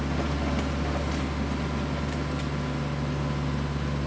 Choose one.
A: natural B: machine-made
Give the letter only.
A